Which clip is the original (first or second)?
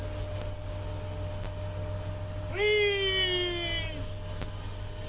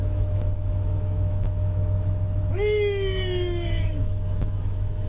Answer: first